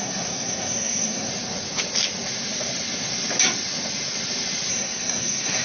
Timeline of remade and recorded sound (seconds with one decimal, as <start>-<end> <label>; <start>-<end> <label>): 0.0-1.3 remade; 1.3-4.7 recorded; 4.7-5.6 remade